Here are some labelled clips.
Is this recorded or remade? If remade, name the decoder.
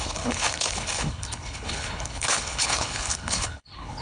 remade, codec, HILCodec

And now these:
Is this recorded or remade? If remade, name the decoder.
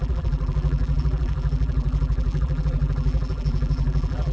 remade, vocoder, BigVGAN v2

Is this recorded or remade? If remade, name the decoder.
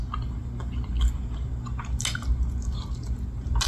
recorded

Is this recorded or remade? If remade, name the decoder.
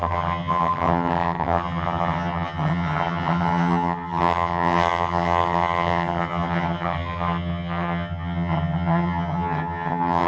remade, vocoder, HiFi-GAN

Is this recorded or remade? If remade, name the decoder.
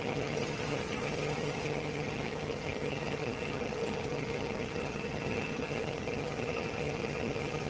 remade, vocoder, HiFi-GAN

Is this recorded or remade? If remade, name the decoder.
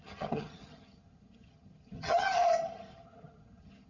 remade, vocoder, HiFi-GAN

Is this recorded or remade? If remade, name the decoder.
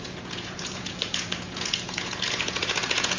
remade, vocoder, Vocos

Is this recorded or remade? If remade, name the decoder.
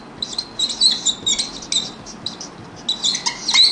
recorded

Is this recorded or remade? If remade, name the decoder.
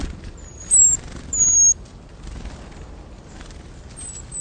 recorded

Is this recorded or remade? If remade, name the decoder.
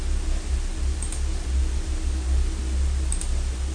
recorded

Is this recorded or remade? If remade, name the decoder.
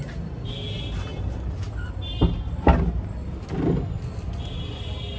recorded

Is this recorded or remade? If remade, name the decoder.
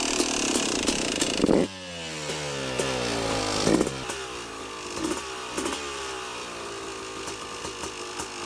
recorded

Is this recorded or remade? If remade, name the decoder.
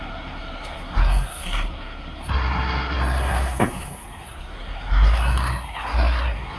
remade, codec, SNAC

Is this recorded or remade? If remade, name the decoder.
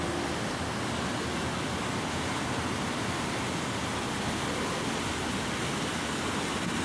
recorded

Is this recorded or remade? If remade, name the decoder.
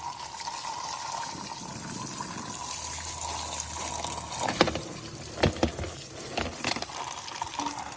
recorded